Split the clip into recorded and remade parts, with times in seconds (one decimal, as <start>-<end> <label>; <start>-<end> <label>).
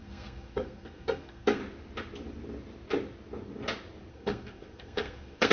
0.0-1.6 remade; 1.6-4.1 recorded; 4.1-5.5 remade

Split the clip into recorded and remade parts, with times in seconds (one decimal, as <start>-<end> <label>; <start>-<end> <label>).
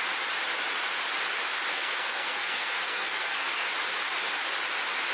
0.0-1.7 recorded; 1.7-3.7 remade; 3.7-5.1 recorded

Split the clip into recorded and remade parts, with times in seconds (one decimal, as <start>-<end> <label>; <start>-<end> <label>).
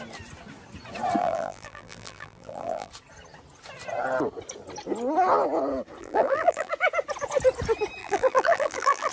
0.0-1.2 recorded; 1.2-2.9 remade; 2.9-6.0 recorded; 6.0-6.7 remade; 6.7-8.0 recorded; 8.0-9.1 remade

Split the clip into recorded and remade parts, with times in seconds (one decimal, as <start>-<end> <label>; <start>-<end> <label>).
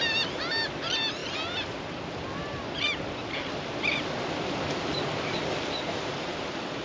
0.0-6.8 recorded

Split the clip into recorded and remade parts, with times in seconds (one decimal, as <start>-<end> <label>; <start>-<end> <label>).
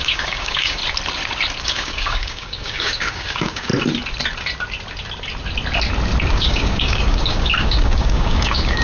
0.0-0.8 remade; 0.8-1.6 recorded; 1.6-3.7 remade; 3.7-6.3 recorded; 6.3-8.8 remade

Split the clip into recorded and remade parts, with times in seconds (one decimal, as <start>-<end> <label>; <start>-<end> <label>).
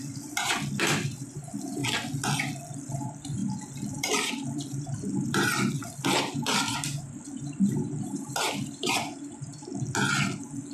0.0-1.8 remade; 1.8-2.9 recorded; 2.9-9.7 remade; 9.7-10.7 recorded